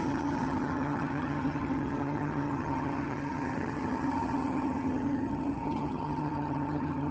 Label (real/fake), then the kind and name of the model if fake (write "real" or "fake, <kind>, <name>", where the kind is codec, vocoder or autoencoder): fake, vocoder, HiFi-GAN